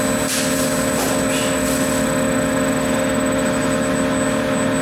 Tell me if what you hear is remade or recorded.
recorded